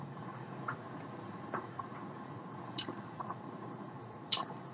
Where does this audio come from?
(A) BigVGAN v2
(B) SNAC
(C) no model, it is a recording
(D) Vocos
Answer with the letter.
D